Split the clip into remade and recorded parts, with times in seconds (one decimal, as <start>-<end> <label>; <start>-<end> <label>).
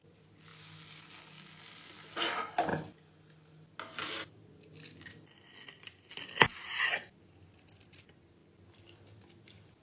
0.0-9.8 recorded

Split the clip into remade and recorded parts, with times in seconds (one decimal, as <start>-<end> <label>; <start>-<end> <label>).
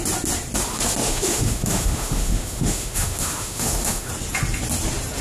0.0-1.0 recorded; 1.0-4.1 remade; 4.1-5.2 recorded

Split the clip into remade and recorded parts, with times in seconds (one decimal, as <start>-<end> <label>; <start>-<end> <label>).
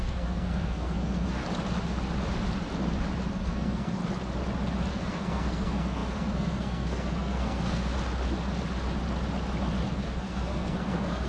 0.0-1.4 remade; 1.4-3.3 recorded; 3.3-4.0 remade; 4.0-4.9 recorded; 4.9-7.9 remade; 7.9-9.8 recorded; 9.8-11.3 remade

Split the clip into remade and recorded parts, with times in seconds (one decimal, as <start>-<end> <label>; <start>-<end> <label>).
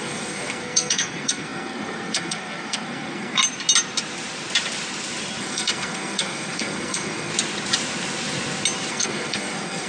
0.0-3.4 remade; 3.4-5.4 recorded; 5.4-7.3 remade; 7.3-8.9 recorded; 8.9-9.9 remade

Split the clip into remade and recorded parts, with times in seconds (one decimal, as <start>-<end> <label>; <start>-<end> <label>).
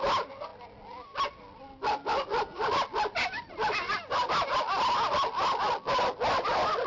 0.0-6.9 recorded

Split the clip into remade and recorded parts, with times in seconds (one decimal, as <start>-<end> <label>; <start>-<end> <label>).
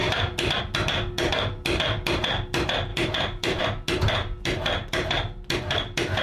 0.0-2.9 recorded; 2.9-3.6 remade; 3.6-4.2 recorded; 4.2-5.1 remade; 5.1-6.2 recorded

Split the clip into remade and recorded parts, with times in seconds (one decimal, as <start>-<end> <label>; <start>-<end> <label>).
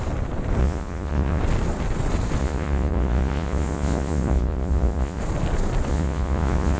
0.0-0.6 recorded; 0.6-1.4 remade; 1.4-2.4 recorded; 2.4-5.2 remade; 5.2-5.9 recorded; 5.9-6.8 remade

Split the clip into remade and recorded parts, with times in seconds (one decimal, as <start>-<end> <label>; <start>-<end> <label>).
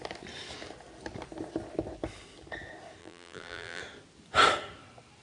0.0-3.0 recorded; 3.0-3.8 remade; 3.8-5.2 recorded